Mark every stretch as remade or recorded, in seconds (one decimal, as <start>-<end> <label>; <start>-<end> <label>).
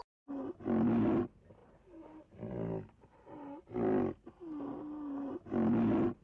0.0-6.2 recorded